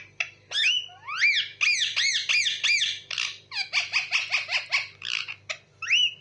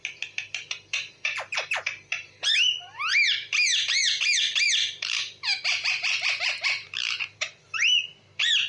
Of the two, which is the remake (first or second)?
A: second